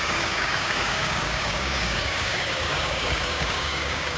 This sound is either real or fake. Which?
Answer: fake